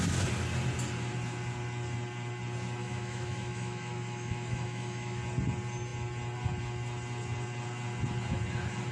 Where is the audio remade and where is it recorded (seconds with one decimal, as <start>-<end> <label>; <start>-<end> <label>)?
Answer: 0.0-2.8 recorded; 2.8-5.2 remade; 5.2-8.9 recorded